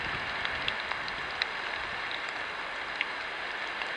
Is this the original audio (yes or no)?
yes